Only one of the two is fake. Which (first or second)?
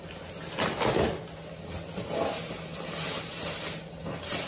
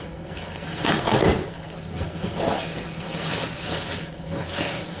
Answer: second